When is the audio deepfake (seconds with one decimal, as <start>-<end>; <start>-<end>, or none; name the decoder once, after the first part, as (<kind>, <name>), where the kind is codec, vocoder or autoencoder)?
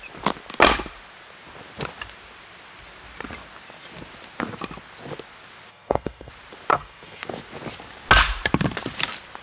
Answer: 5.7-6.3 (codec, SNAC); 6.7-7.2